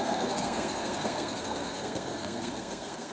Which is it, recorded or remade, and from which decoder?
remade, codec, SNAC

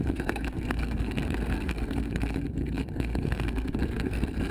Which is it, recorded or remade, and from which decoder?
remade, codec, SNAC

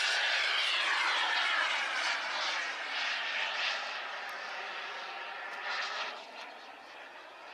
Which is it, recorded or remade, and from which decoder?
recorded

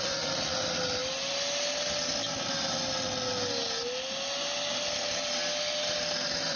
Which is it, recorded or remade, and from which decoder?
recorded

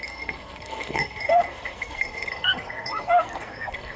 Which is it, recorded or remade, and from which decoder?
remade, codec, SNAC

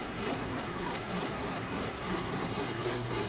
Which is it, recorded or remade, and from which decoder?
remade, codec, SNAC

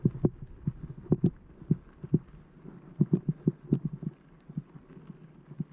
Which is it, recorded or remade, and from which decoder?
recorded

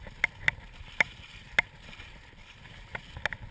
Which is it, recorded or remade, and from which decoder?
recorded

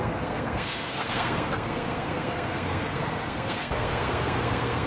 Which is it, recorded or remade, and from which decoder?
remade, codec, SNAC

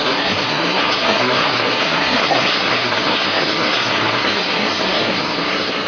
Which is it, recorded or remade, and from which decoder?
remade, codec, SNAC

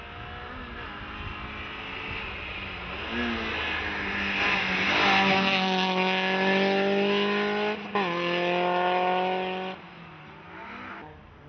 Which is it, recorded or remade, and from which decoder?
recorded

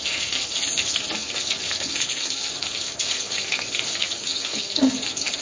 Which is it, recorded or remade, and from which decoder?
remade, codec, SNAC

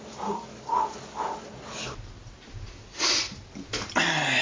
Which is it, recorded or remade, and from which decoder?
recorded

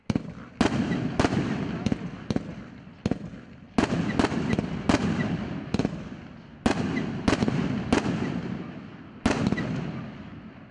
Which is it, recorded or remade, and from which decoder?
recorded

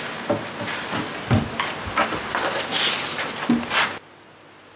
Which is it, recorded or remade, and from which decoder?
recorded